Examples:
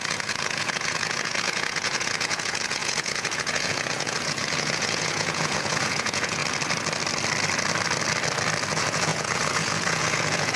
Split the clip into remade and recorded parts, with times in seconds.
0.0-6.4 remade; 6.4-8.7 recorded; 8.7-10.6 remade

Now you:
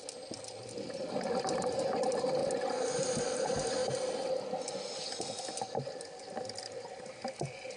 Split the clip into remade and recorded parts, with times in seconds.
0.0-7.8 recorded

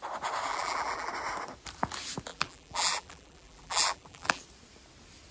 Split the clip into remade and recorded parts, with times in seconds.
0.0-0.5 recorded; 0.5-1.1 remade; 1.1-2.3 recorded; 2.3-4.4 remade; 4.4-5.3 recorded

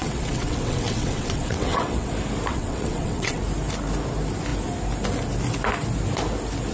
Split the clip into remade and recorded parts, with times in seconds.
0.0-2.1 remade; 2.1-2.5 recorded; 2.5-3.4 remade; 3.4-6.7 recorded

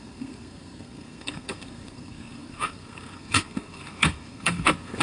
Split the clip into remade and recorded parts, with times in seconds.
0.0-5.0 remade

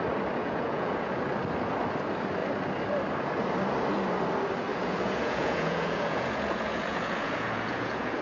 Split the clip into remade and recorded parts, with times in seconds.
0.0-0.4 recorded; 0.4-1.1 remade; 1.1-4.7 recorded; 4.7-8.2 remade

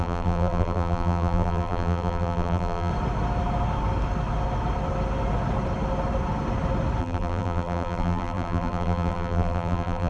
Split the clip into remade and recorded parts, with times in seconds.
0.0-2.9 remade; 2.9-7.0 recorded; 7.0-10.1 remade